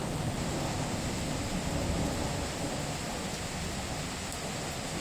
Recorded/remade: recorded